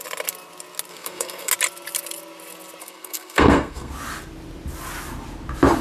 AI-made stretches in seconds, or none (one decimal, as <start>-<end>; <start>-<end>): 0.9-1.5; 2.8-3.9